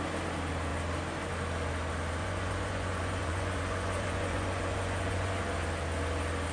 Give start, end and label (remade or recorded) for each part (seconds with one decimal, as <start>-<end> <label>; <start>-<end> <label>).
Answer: 0.0-2.2 recorded; 2.2-5.4 remade; 5.4-6.5 recorded